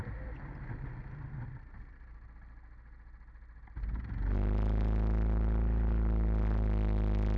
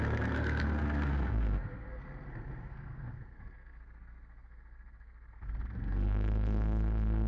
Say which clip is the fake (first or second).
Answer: second